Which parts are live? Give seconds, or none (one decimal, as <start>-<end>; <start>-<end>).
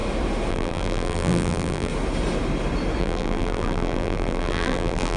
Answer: 0.0-0.5; 1.9-3.0